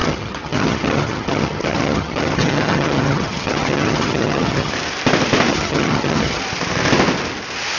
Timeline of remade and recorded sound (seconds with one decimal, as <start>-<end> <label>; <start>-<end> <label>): 0.0-4.7 remade; 4.7-5.5 recorded; 5.5-6.4 remade; 6.4-7.8 recorded

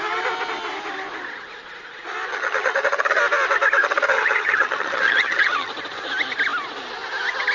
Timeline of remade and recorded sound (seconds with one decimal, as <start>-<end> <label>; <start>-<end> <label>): 0.0-2.3 recorded; 2.3-3.2 remade; 3.2-3.8 recorded; 3.8-5.7 remade; 5.7-7.5 recorded